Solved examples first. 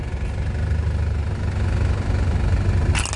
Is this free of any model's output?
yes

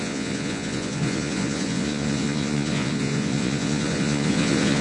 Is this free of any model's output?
no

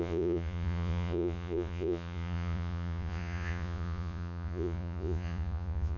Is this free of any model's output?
no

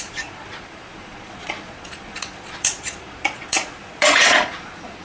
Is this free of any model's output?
no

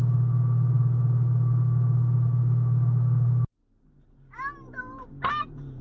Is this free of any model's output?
yes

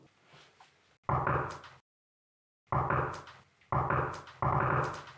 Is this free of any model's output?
yes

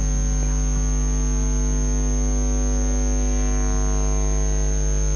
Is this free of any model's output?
yes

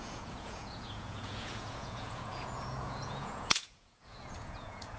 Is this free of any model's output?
no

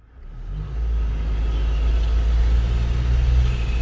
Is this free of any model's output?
yes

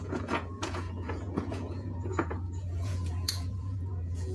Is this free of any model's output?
no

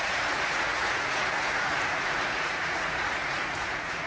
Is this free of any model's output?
no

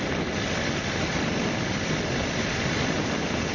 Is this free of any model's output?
yes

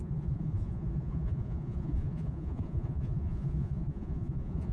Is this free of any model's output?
no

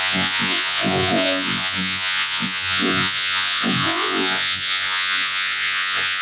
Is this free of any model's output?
no